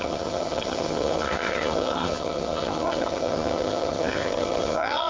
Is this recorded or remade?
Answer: remade